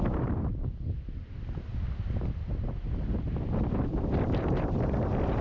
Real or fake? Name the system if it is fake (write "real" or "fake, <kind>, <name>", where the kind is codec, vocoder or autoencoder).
real